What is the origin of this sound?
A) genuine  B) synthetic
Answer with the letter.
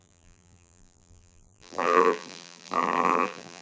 B